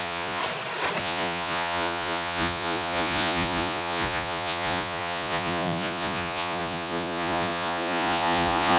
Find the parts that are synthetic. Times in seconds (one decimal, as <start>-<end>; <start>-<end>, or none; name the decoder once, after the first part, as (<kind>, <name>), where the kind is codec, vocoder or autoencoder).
0.0-0.4 (vocoder, Vocos); 1.0-8.8